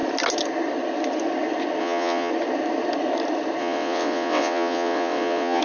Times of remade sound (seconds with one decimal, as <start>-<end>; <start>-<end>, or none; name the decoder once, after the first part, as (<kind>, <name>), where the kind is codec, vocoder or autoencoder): 1.8-2.3 (vocoder, WaveNeXt); 3.6-5.6